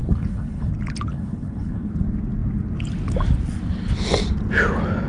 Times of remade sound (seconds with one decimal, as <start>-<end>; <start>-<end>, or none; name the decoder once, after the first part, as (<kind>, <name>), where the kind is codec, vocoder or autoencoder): 0.0-0.7 (codec, HILCodec); 1.1-1.9